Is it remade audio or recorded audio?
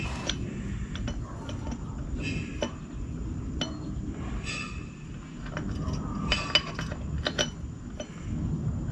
recorded